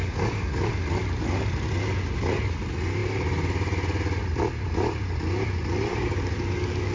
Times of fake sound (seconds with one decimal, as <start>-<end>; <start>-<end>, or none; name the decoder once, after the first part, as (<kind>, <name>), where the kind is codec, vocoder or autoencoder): 0.0-0.7 (codec, DAC); 5.9-6.9